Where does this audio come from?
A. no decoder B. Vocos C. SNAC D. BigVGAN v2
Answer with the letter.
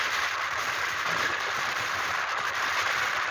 D